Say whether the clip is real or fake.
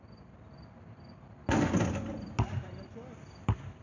real